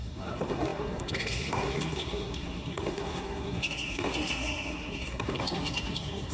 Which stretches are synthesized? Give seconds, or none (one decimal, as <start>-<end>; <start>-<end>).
0.0-6.3